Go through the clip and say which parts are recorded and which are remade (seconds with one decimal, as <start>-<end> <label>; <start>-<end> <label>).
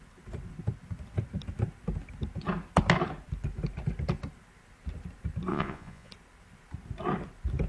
0.0-5.5 recorded; 5.5-6.1 remade; 6.1-7.7 recorded